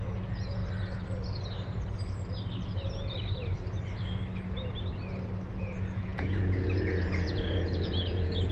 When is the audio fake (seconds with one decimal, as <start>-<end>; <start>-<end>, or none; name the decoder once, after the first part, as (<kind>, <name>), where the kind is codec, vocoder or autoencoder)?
0.0-0.6 (vocoder, Vocos); 5.5-8.5